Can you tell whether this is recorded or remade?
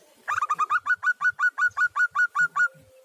recorded